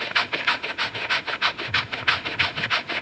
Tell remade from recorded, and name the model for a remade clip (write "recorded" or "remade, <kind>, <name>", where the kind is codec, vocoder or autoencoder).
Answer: remade, autoencoder, DAC-VAE